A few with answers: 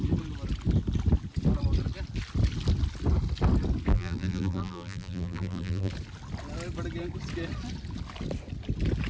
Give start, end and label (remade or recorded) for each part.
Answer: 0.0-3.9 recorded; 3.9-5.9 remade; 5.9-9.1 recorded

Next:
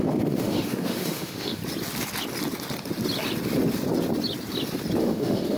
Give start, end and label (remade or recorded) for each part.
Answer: 0.0-1.6 remade; 1.6-5.0 recorded; 5.0-5.6 remade